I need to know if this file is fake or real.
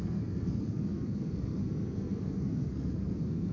fake